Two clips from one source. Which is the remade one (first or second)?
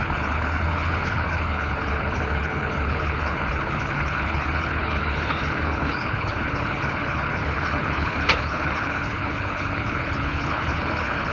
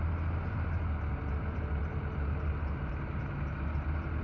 first